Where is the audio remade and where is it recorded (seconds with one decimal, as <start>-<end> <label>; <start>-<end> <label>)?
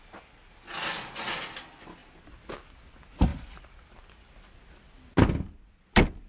0.0-6.3 recorded